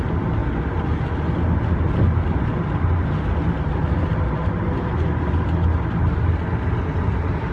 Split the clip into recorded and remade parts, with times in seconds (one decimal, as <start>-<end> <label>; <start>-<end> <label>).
0.0-7.5 recorded

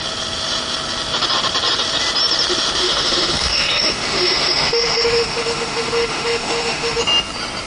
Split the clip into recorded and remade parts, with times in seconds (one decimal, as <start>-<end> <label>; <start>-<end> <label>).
0.0-2.8 recorded; 2.8-7.0 remade; 7.0-7.7 recorded

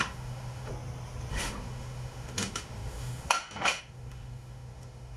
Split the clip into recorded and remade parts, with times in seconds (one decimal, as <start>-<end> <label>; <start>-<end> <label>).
0.0-0.7 remade; 0.7-1.3 recorded; 1.3-5.2 remade

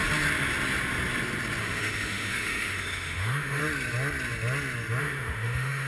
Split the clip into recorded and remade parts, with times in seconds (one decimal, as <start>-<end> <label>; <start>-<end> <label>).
0.0-1.6 recorded; 1.6-3.6 remade; 3.6-5.0 recorded; 5.0-5.9 remade